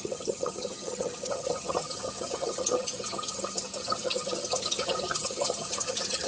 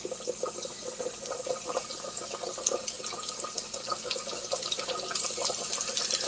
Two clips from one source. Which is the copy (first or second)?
first